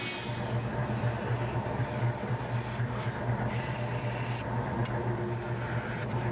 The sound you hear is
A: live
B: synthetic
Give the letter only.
A